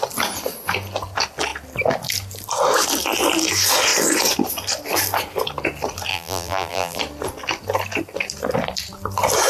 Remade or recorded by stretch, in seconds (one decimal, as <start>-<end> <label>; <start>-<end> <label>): 0.0-6.1 recorded; 6.1-7.0 remade; 7.0-9.5 recorded